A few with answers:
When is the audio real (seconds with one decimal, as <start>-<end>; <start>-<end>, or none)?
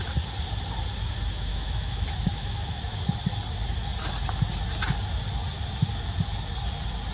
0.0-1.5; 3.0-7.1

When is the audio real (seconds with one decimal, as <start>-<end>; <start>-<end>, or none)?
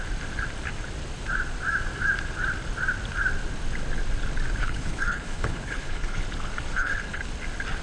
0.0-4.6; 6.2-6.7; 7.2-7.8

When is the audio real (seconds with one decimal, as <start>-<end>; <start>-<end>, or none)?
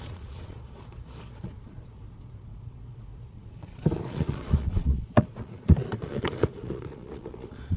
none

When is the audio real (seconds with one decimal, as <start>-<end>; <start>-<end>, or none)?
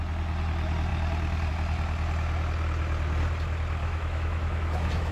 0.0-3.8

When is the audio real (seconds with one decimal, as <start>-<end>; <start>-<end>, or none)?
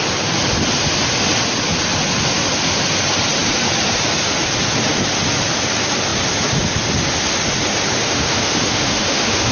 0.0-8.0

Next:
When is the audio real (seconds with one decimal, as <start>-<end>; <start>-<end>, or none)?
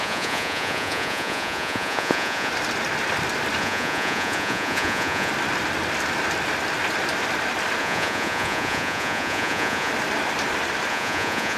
2.5-3.6; 5.3-7.8; 9.9-10.9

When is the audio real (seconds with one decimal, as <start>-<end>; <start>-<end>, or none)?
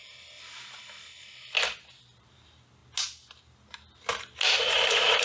0.0-2.2; 2.8-4.6